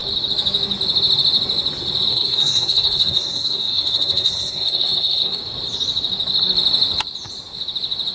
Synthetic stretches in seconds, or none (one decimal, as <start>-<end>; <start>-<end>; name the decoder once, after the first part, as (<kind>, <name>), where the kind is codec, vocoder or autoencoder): 2.1-5.4 (codec, SNAC)